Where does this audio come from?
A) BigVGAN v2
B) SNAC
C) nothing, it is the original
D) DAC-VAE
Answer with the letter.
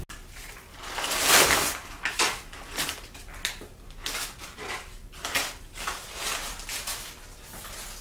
C